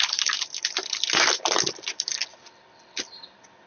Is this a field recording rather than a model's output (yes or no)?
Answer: yes